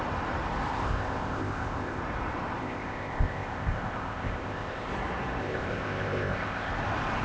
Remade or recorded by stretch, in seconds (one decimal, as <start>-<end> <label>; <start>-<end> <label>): 0.0-0.7 recorded; 0.7-2.0 remade; 2.0-2.6 recorded; 2.6-4.9 remade; 4.9-5.4 recorded; 5.4-6.7 remade; 6.7-7.2 recorded